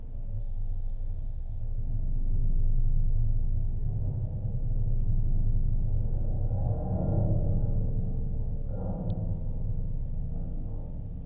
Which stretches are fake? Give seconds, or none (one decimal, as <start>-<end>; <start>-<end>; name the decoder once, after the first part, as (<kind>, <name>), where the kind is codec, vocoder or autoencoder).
0.4-1.6 (codec, SNAC)